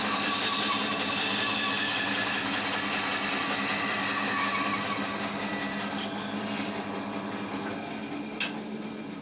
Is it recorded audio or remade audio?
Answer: recorded